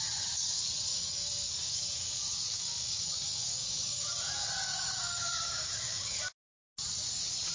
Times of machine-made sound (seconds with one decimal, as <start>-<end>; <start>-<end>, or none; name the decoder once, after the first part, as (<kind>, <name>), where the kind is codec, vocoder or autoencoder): 0.9-4.2 (codec, DAC); 4.7-6.2